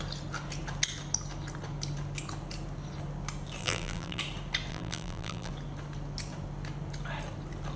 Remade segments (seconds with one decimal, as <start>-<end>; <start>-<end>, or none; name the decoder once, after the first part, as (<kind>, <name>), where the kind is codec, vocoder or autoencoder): 3.6-4.2 (vocoder, BigVGAN v2); 4.7-5.5